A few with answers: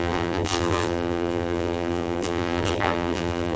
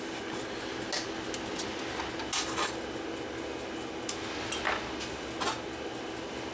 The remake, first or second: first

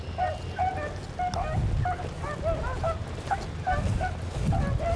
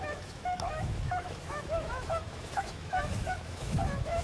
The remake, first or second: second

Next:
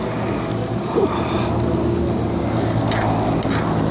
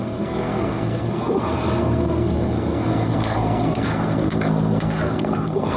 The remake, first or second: second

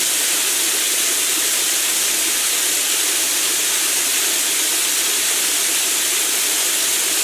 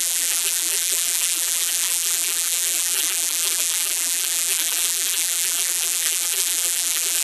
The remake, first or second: second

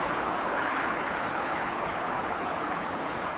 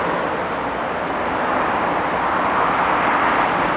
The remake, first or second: first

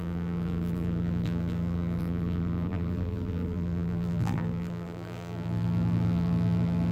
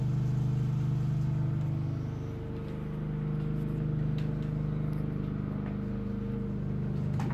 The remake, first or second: first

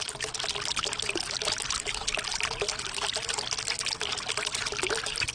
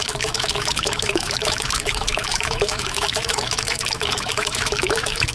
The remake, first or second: second